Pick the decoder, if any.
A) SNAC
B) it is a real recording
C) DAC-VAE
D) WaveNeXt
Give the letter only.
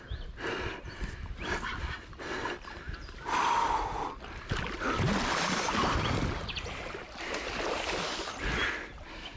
B